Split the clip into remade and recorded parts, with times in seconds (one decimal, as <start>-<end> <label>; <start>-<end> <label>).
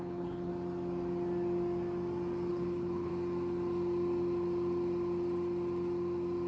0.0-0.5 remade; 0.5-2.5 recorded; 2.5-3.1 remade; 3.1-6.5 recorded